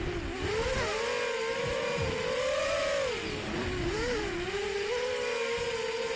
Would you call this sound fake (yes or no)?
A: no